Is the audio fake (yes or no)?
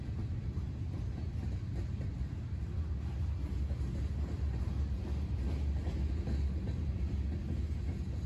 no